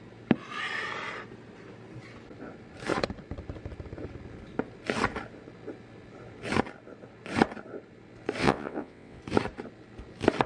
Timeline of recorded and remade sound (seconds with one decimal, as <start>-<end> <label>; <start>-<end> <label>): 0.0-8.4 recorded; 8.4-9.2 remade; 9.2-10.5 recorded